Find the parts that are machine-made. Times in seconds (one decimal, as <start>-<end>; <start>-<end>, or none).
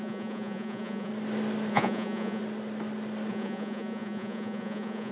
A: 0.0-1.1; 1.7-2.4; 3.3-5.1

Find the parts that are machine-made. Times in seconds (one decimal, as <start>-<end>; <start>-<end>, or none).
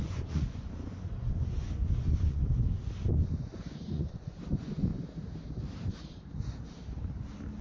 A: 0.0-2.4; 3.1-4.9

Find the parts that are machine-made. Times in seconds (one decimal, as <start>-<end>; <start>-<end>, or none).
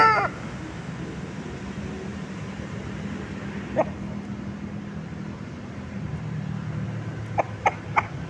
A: none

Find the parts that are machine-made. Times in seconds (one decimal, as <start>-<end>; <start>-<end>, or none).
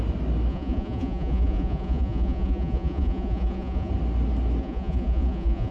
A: 0.5-3.9; 4.6-5.7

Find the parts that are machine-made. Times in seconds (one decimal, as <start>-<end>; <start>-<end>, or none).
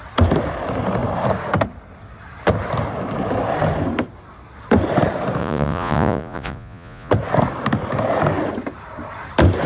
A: 5.4-7.1